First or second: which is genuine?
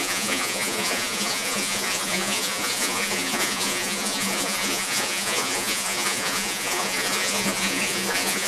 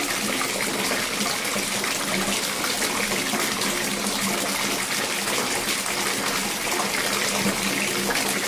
second